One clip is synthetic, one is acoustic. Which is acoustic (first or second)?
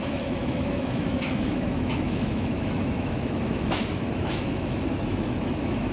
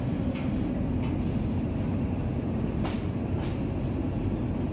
second